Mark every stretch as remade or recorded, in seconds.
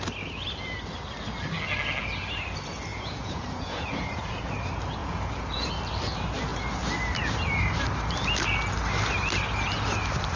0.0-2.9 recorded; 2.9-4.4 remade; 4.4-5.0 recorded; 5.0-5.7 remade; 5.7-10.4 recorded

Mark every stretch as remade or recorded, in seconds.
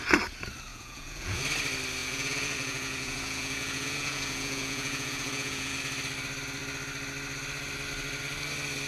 0.0-0.7 recorded; 0.7-1.4 remade; 1.4-2.0 recorded; 2.0-5.8 remade; 5.8-8.9 recorded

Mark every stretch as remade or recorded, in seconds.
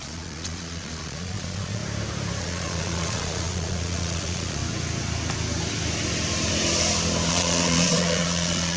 0.0-1.8 remade; 1.8-2.4 recorded; 2.4-4.6 remade; 4.6-7.3 recorded; 7.3-8.8 remade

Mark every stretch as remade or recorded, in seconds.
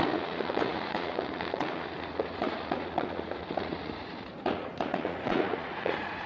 0.0-6.3 remade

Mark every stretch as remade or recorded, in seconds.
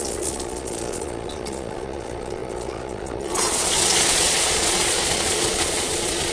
0.0-6.3 remade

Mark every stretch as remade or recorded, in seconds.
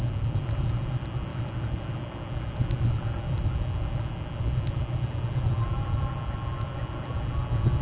0.0-7.8 recorded